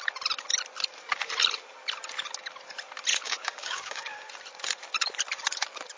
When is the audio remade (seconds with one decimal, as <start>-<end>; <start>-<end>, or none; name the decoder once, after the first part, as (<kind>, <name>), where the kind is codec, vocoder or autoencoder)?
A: 3.1-4.3 (codec, DAC)

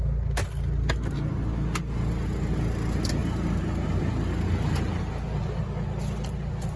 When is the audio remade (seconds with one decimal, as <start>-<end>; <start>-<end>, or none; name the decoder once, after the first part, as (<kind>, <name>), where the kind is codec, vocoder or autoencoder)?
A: none